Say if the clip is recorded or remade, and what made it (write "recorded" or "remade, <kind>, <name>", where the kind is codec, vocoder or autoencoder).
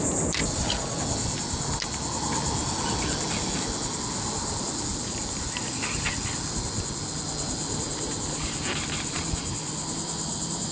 recorded